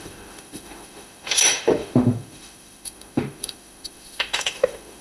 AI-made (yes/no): yes